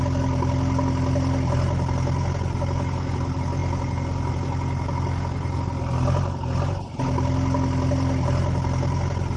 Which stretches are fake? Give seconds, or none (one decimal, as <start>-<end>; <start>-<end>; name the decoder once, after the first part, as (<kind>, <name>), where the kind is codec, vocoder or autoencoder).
none